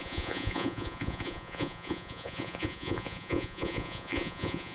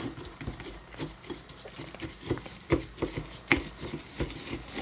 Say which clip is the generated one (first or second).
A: first